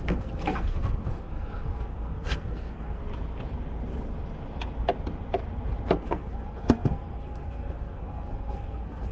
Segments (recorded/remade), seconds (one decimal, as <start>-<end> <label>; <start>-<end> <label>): 0.0-3.0 remade; 3.0-5.9 recorded; 5.9-9.1 remade